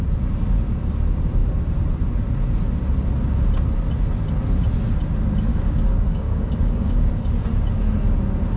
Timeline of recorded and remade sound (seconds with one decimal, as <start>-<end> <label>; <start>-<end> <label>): 0.0-5.5 recorded; 5.5-7.1 remade; 7.1-8.6 recorded

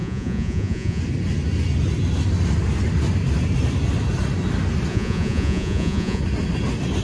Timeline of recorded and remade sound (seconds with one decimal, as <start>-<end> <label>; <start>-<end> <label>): 0.0-1.0 remade; 1.0-4.9 recorded; 4.9-6.2 remade; 6.2-7.0 recorded